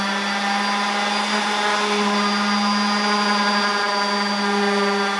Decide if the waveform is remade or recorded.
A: recorded